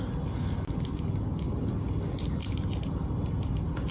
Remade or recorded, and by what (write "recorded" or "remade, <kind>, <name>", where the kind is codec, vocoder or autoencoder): recorded